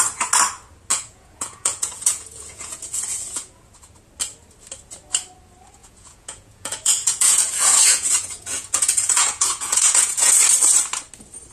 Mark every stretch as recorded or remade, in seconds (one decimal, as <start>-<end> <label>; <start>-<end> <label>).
0.0-0.9 recorded; 0.9-3.6 remade; 3.6-5.8 recorded; 5.8-10.3 remade; 10.3-11.5 recorded